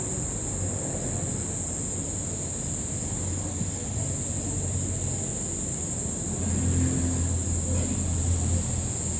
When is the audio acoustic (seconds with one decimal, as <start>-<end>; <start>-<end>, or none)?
0.0-9.2

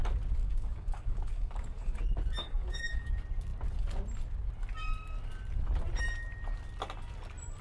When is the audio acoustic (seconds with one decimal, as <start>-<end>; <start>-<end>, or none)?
0.0-0.4; 2.0-2.4; 3.1-7.6

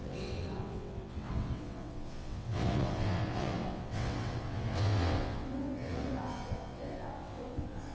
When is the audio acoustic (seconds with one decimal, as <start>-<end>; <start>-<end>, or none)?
none